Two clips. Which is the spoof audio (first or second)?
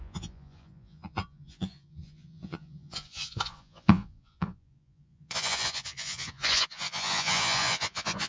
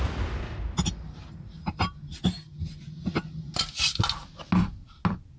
first